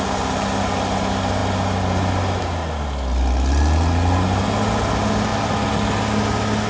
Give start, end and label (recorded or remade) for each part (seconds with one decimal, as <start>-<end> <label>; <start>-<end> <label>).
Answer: 0.0-6.7 recorded